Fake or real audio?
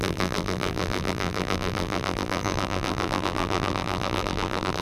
fake